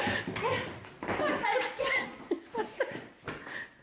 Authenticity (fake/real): real